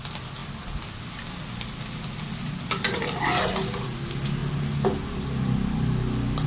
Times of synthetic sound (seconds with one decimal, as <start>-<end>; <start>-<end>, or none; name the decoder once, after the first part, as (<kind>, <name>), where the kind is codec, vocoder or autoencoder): none